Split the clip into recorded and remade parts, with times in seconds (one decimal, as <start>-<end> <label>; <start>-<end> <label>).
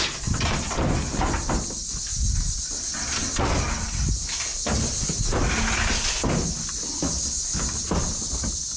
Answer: 0.0-8.8 recorded